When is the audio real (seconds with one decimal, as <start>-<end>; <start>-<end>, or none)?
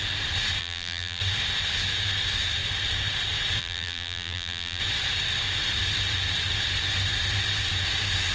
0.0-0.6; 1.2-3.6; 4.8-8.3